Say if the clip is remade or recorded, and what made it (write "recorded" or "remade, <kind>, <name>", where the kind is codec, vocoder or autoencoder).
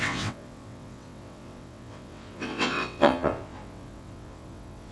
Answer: remade, vocoder, WaveNeXt